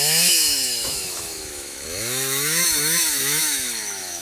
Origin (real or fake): fake